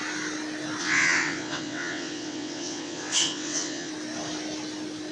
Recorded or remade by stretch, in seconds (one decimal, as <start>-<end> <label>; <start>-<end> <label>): 0.0-0.8 recorded; 0.8-3.9 remade; 3.9-5.1 recorded